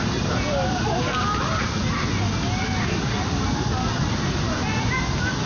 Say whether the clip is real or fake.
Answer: real